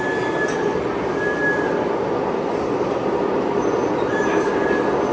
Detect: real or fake real